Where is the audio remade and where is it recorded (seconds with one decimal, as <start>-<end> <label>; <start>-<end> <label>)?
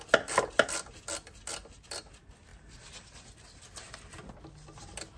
0.0-5.2 recorded